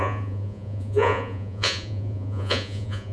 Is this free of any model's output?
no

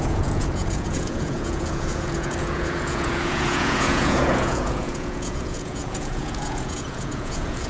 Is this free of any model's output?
no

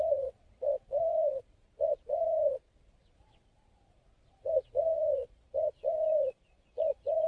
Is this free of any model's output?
no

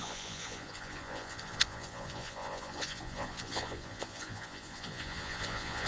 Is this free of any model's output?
no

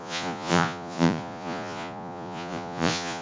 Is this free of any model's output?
no